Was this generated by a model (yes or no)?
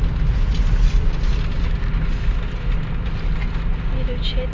no